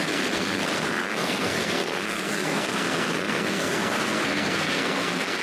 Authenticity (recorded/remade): remade